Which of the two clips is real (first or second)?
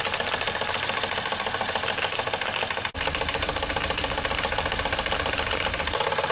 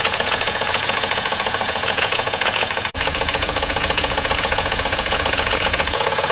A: first